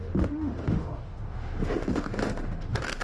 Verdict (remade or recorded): remade